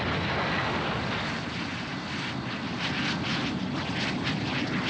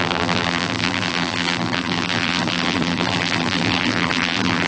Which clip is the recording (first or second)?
first